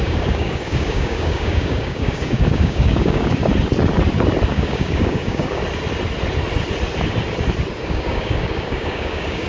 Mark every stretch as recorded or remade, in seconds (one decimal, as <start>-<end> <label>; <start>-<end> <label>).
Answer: 0.0-3.4 remade; 3.4-4.5 recorded; 4.5-5.6 remade; 5.6-7.9 recorded; 7.9-9.5 remade